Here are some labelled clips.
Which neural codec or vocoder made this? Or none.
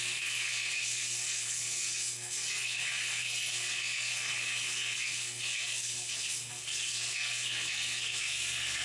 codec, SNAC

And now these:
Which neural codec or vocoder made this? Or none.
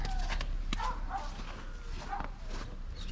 none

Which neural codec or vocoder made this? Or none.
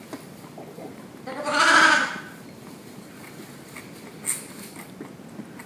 none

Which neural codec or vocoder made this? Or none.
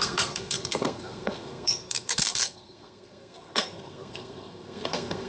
codec, SNAC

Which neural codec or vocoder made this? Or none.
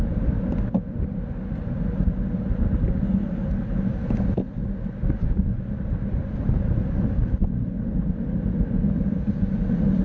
none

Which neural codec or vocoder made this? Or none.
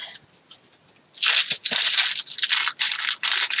none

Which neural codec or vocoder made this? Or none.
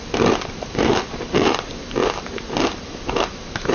none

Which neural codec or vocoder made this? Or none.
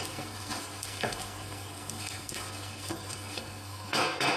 codec, SNAC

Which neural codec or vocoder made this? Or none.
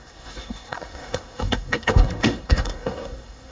codec, SNAC